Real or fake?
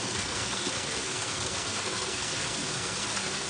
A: fake